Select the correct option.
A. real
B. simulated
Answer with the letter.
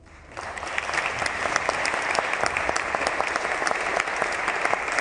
B